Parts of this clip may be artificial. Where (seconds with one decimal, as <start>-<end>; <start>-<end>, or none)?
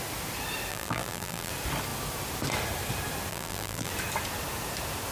0.7-1.5; 3.3-3.9